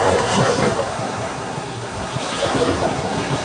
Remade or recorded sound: remade